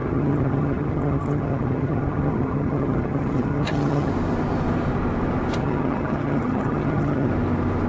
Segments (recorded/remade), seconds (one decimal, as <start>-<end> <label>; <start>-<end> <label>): 0.0-4.1 remade; 4.1-5.6 recorded; 5.6-7.3 remade; 7.3-7.9 recorded

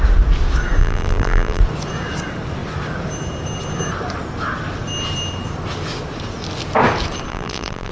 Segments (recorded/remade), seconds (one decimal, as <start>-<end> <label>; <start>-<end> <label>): 0.0-0.8 recorded; 0.8-1.6 remade; 1.6-7.3 recorded; 7.3-7.9 remade

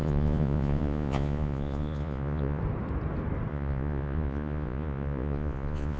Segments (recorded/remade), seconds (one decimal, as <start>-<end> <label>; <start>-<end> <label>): 0.0-2.6 remade; 2.6-3.5 recorded; 3.5-6.0 remade

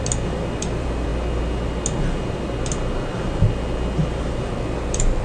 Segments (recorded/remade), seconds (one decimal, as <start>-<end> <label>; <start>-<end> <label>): 0.0-0.6 recorded; 0.6-1.1 remade; 1.1-4.2 recorded; 4.2-5.2 remade

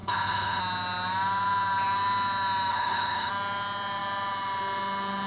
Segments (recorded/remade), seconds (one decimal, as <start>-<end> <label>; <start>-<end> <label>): 0.0-0.6 remade; 0.6-2.7 recorded; 2.7-3.3 remade; 3.3-5.3 recorded

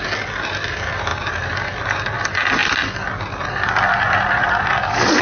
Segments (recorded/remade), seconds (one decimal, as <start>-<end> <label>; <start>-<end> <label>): 0.0-5.2 recorded

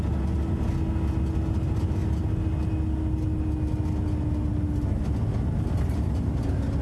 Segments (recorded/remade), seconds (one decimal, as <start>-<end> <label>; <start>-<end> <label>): 0.0-6.8 recorded